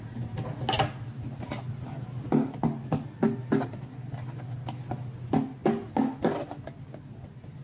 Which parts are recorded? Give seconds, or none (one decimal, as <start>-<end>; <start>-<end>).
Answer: 0.0-7.6